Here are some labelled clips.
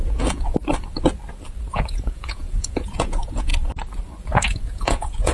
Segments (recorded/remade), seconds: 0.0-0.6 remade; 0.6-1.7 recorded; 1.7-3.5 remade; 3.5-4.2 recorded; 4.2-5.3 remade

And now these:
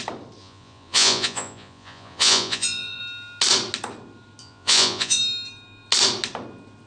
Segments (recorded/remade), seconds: 0.0-0.4 recorded; 0.4-3.0 remade; 3.0-4.4 recorded; 4.4-5.2 remade; 5.2-6.9 recorded

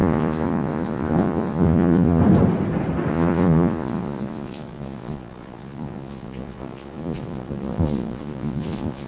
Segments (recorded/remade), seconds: 0.0-2.2 remade; 2.2-3.1 recorded; 3.1-9.1 remade

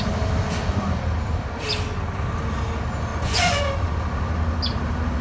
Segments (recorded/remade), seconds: 0.0-3.1 recorded; 3.1-3.6 remade; 3.6-5.2 recorded